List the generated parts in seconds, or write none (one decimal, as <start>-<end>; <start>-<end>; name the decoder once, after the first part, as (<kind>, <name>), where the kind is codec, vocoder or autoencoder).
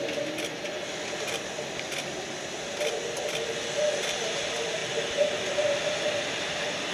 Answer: none